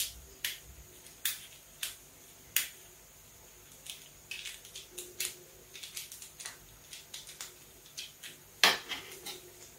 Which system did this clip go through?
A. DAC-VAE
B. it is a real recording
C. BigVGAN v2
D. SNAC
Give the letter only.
B